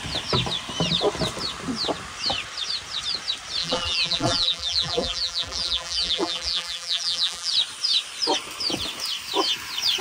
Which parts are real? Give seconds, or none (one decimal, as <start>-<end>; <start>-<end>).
0.0-3.6; 7.5-10.0